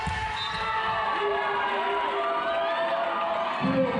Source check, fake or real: real